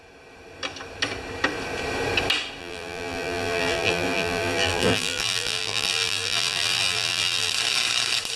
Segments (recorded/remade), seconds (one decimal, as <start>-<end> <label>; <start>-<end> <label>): 0.0-2.6 recorded; 2.6-7.5 remade; 7.5-8.4 recorded